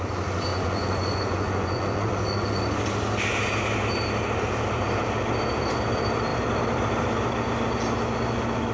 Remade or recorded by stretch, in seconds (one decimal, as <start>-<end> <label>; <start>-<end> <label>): 0.0-0.5 recorded; 0.5-2.6 remade; 2.6-8.7 recorded